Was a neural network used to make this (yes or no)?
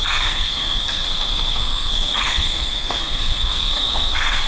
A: yes